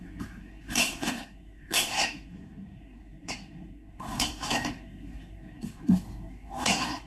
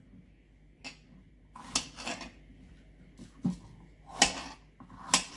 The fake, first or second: first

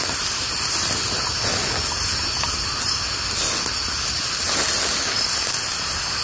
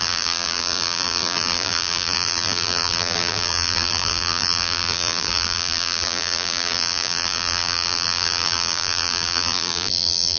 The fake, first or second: second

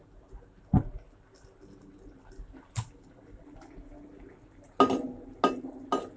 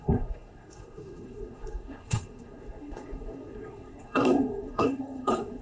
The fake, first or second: second